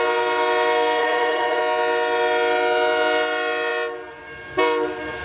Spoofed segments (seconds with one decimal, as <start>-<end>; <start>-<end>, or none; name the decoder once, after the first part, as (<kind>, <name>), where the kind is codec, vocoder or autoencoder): 1.0-1.6 (vocoder, WaveNeXt)